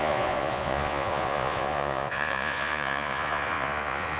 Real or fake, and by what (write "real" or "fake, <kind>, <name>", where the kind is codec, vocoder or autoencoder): fake, vocoder, Vocos